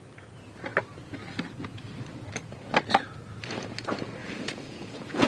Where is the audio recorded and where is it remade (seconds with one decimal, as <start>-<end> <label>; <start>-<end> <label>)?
0.0-4.2 recorded; 4.2-5.3 remade